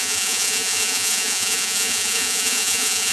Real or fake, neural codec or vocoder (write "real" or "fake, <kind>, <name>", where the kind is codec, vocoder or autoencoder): fake, vocoder, Vocos